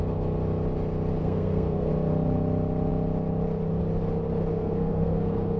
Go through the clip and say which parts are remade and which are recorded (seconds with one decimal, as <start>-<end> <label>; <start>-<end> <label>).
0.0-1.2 recorded; 1.2-1.9 remade; 1.9-4.5 recorded; 4.5-5.6 remade